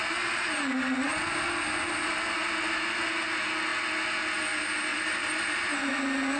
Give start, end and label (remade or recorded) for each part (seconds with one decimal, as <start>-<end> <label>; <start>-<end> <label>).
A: 0.0-4.9 recorded; 4.9-5.9 remade; 5.9-6.4 recorded